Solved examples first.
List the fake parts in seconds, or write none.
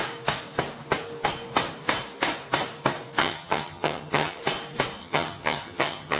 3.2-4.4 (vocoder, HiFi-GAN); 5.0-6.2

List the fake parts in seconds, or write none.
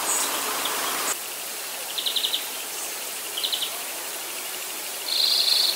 1.5-5.0 (vocoder, BigVGAN v2)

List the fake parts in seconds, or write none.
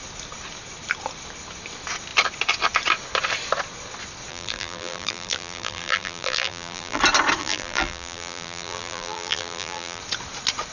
4.3-7.0 (vocoder, BigVGAN v2); 7.4-10.0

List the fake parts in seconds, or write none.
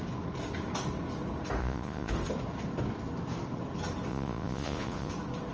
1.6-2.1 (vocoder, Vocos); 4.1-5.1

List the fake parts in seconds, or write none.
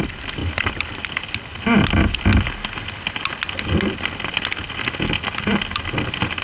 none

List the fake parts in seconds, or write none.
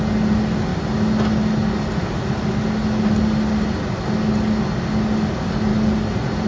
none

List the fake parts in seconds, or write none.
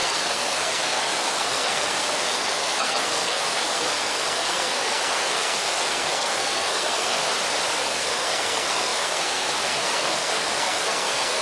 0.0-7.2 (codec, SNAC); 7.7-11.4